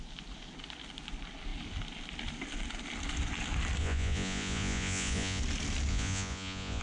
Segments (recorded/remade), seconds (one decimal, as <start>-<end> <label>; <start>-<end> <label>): 0.0-3.8 recorded; 3.8-5.4 remade; 5.4-5.9 recorded; 5.9-6.8 remade